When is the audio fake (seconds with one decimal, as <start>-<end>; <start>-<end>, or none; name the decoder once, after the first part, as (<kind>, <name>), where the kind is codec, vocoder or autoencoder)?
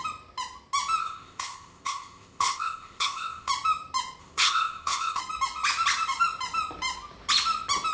1.0-3.5 (codec, ZipCodec); 4.2-5.2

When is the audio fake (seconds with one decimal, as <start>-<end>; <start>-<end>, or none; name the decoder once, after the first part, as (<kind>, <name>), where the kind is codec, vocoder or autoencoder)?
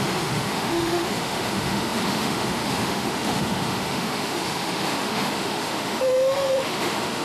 0.0-7.2 (autoencoder, DAC-VAE)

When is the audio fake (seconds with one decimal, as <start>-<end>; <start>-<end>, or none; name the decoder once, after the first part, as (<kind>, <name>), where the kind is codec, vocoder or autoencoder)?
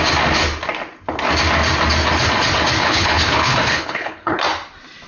2.8-4.4 (codec, HILCodec)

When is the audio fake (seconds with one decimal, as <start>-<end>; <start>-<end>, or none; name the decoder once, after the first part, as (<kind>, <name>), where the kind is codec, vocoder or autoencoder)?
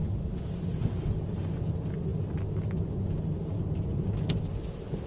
none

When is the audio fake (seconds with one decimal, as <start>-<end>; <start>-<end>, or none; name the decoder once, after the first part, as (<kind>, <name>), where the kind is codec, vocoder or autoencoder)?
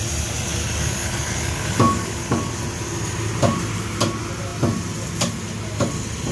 0.5-2.5 (codec, DAC)